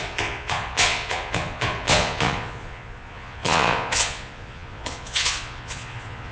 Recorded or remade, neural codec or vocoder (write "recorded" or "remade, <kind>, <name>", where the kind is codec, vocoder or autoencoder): remade, vocoder, Vocos